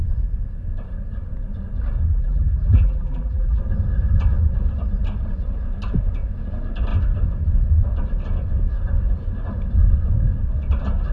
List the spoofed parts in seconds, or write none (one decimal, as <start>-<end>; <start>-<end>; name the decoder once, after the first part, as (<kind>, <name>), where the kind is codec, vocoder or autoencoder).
2.1-3.6 (vocoder, BigVGAN v2)